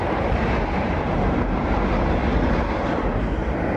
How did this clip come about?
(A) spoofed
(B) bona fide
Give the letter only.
B